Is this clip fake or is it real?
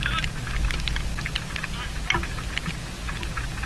real